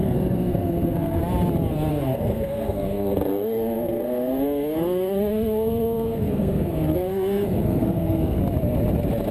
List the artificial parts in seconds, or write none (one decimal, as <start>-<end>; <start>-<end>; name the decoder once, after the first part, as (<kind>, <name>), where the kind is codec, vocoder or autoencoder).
0.0-1.2 (codec, SNAC); 1.9-8.4